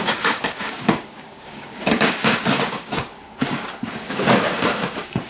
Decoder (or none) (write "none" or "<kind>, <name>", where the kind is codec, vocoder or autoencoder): codec, DAC